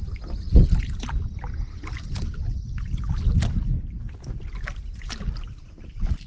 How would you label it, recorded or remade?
recorded